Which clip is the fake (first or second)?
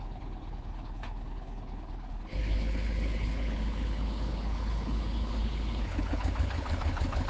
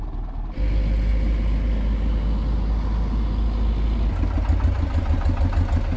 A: first